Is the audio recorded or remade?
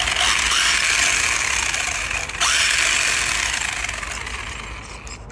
recorded